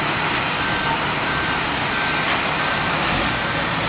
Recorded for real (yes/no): yes